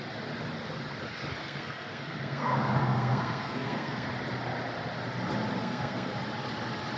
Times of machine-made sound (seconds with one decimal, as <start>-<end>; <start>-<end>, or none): 1.4-4.1; 5.6-6.2